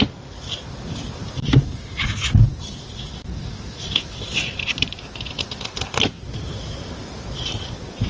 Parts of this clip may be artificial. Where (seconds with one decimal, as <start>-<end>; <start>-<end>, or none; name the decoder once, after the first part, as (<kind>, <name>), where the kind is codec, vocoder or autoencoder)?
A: none